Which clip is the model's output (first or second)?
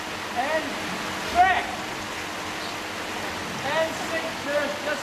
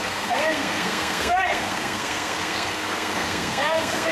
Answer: second